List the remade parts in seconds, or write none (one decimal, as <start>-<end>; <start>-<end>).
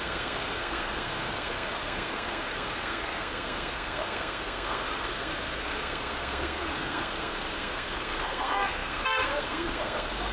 0.0-10.3